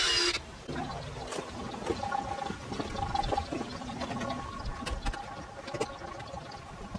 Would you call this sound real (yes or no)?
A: yes